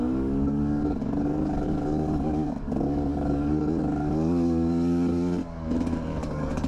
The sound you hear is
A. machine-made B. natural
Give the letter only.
A